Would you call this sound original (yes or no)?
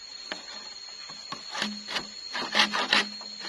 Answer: yes